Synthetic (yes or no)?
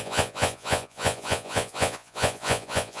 yes